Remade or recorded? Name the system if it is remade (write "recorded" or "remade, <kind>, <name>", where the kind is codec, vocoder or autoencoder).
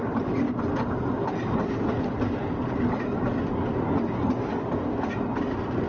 recorded